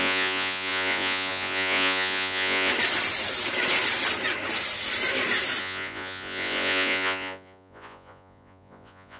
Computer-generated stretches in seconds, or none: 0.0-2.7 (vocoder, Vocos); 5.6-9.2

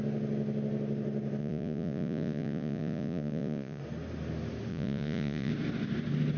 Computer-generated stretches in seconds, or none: 1.4-3.8 (vocoder, Vocos); 4.7-5.5

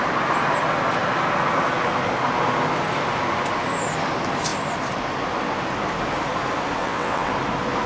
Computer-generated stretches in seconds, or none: 6.8-7.3 (vocoder, WaveNeXt)